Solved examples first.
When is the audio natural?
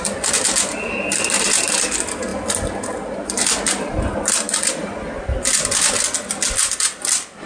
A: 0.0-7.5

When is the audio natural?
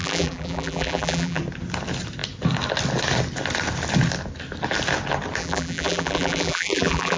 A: 1.4-5.4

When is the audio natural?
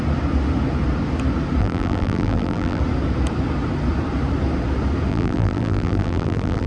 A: 0.0-1.6; 2.8-5.1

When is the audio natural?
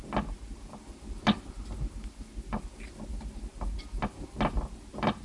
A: 0.0-5.2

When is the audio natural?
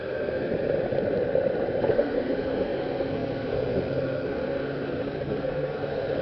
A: 0.5-1.9